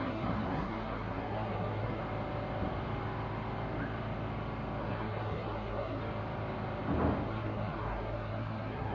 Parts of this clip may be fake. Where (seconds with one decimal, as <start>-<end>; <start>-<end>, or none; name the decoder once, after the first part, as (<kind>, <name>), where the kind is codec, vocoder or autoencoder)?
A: 0.0-2.0 (codec, SNAC); 4.8-6.0; 7.3-8.9